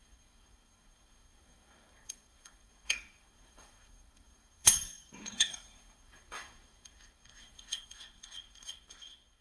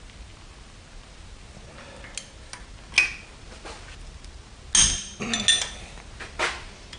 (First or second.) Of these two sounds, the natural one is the second